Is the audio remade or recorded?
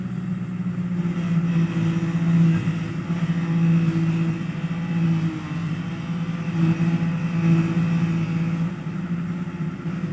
recorded